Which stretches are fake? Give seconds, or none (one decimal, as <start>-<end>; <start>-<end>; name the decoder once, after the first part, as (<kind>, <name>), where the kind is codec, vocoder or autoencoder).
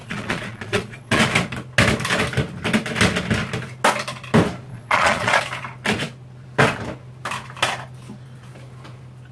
0.0-1.2 (vocoder, Vocos); 4.7-5.4